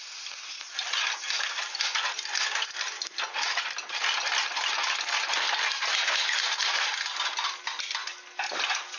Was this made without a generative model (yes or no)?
yes